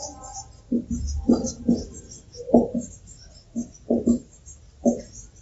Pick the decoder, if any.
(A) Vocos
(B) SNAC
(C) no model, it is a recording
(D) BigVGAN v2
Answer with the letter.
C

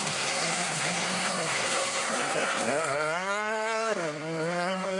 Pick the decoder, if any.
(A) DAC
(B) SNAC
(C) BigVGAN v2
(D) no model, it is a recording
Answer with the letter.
B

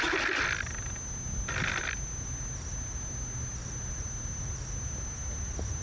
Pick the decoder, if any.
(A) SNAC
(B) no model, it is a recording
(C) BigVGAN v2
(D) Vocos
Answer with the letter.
B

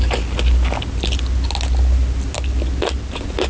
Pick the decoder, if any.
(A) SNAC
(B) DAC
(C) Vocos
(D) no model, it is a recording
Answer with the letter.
D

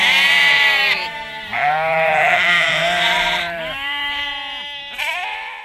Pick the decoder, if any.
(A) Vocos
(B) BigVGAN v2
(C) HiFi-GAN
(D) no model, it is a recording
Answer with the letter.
B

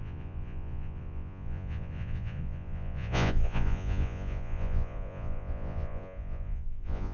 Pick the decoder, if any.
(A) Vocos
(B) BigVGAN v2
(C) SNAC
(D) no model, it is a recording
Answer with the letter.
A